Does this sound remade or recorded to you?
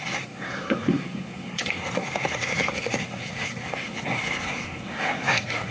remade